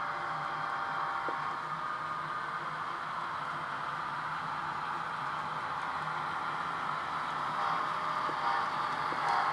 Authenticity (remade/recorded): recorded